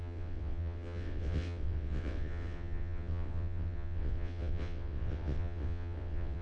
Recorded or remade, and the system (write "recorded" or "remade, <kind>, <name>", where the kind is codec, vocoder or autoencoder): remade, vocoder, WaveNeXt